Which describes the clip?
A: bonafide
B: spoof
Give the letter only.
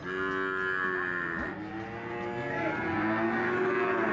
A